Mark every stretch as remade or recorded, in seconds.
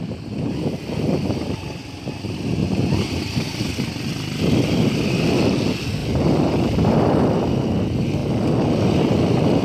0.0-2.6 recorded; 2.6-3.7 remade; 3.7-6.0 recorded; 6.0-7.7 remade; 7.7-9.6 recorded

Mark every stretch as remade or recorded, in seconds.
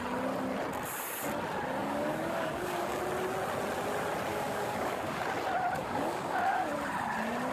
0.0-1.8 recorded; 1.8-3.0 remade; 3.0-4.3 recorded; 4.3-5.2 remade; 5.2-5.8 recorded; 5.8-6.6 remade; 6.6-7.5 recorded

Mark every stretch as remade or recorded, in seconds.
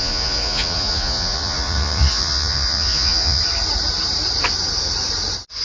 0.0-3.4 remade; 3.4-5.6 recorded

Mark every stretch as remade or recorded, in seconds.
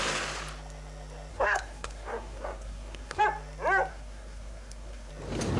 0.0-1.3 recorded; 1.3-3.2 remade; 3.2-3.9 recorded; 3.9-5.1 remade; 5.1-5.6 recorded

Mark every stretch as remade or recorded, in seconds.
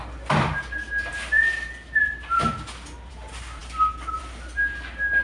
0.0-5.2 recorded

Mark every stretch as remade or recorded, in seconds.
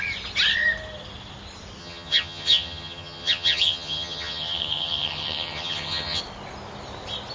0.0-1.8 recorded; 1.8-6.2 remade; 6.2-7.3 recorded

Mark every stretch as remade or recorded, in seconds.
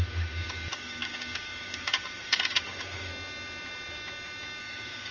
0.0-3.1 remade; 3.1-4.6 recorded; 4.6-5.1 remade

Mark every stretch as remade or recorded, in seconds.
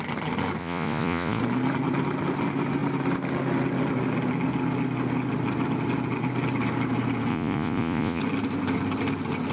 0.0-0.6 recorded; 0.6-1.4 remade; 1.4-7.3 recorded; 7.3-8.2 remade; 8.2-9.5 recorded